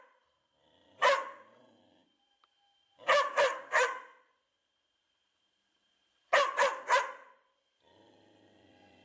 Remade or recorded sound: remade